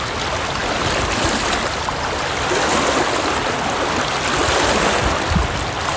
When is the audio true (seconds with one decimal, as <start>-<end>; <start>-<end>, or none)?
0.0-6.0